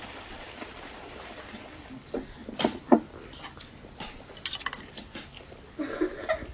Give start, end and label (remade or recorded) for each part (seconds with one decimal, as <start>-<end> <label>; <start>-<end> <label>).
0.0-6.5 recorded